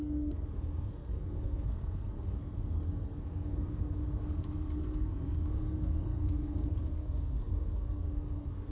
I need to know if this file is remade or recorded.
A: remade